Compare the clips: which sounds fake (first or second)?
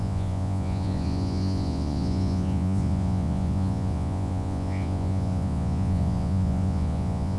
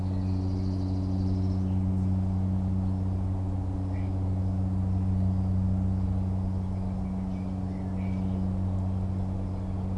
first